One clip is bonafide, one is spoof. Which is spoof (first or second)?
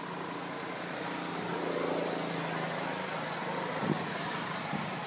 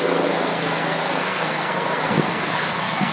second